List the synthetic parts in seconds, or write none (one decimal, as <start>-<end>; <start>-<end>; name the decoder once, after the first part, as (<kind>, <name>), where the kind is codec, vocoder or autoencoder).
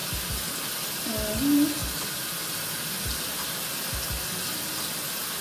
none